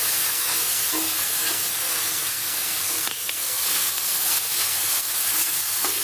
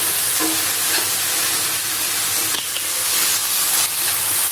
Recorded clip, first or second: second